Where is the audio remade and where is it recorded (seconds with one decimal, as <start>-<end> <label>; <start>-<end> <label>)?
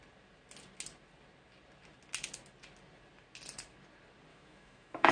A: 0.0-4.3 recorded; 4.3-5.1 remade